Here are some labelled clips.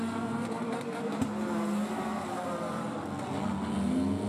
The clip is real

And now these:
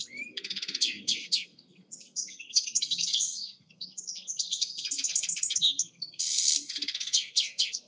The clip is fake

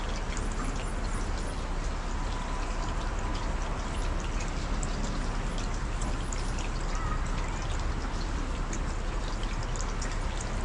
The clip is real